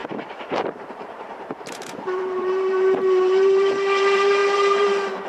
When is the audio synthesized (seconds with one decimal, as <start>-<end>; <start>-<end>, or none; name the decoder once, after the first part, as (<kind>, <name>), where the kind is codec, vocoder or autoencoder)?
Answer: 0.0-5.3 (vocoder, BigVGAN v2)